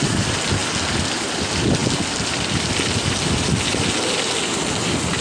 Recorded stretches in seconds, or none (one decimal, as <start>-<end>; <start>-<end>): 0.0-5.2